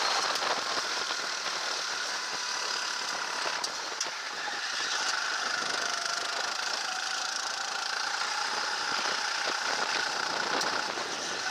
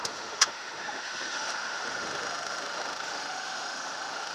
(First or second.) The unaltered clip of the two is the first